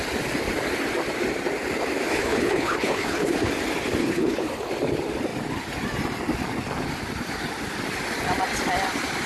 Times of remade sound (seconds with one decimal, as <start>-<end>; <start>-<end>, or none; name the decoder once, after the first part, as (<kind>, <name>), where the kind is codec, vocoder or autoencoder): 2.1-3.5 (codec, HILCodec); 4.0-4.7